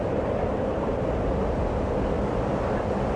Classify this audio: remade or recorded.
recorded